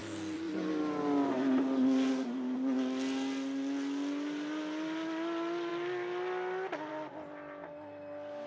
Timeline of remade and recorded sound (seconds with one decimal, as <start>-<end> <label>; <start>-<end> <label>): 0.0-8.5 recorded

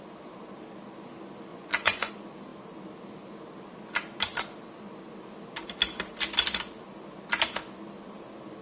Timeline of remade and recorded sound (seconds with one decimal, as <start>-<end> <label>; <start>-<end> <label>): 0.0-1.5 recorded; 1.5-2.1 remade; 2.1-8.6 recorded